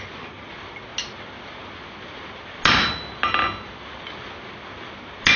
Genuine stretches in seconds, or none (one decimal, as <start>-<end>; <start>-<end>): 0.0-5.4